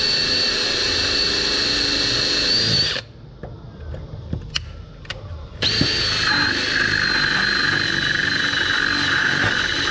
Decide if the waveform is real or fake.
real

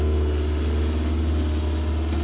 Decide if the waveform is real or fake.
real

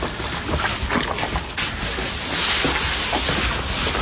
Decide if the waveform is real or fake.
real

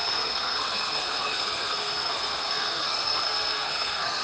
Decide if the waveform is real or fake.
fake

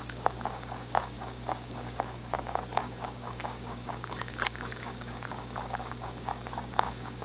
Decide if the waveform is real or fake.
fake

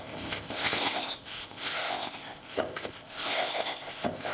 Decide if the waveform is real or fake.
fake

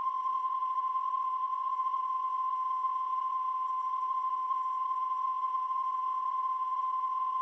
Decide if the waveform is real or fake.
fake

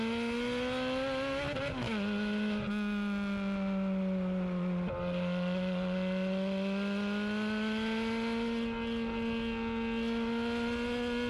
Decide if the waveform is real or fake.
real